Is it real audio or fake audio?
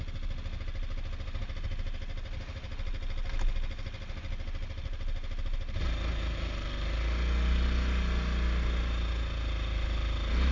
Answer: real